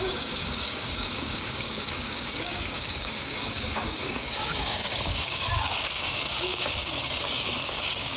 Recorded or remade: remade